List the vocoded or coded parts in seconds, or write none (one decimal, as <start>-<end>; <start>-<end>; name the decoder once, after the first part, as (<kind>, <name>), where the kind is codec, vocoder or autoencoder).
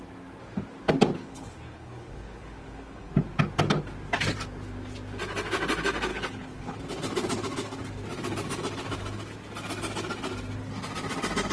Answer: 1.2-3.1 (codec, HILCodec); 6.1-6.8